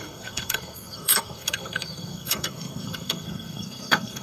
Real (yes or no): no